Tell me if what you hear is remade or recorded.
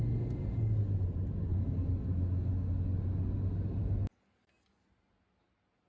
recorded